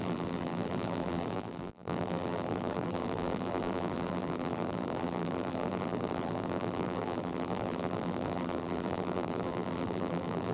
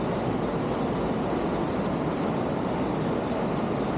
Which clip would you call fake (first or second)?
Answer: first